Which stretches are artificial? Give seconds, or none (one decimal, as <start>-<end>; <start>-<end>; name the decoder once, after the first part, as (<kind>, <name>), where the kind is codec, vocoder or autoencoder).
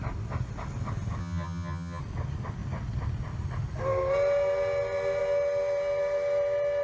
1.2-2.0 (vocoder, HiFi-GAN)